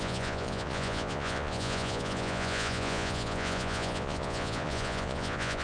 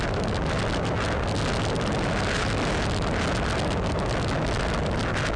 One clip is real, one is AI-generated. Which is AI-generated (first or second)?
first